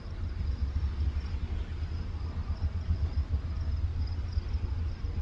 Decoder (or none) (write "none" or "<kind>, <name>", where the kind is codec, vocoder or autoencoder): none